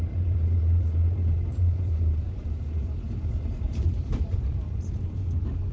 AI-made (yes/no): yes